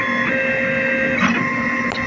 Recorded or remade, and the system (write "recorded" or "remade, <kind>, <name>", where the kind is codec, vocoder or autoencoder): recorded